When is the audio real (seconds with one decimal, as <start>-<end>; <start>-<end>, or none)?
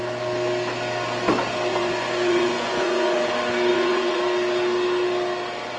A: 0.0-1.7; 3.3-3.7; 4.2-5.8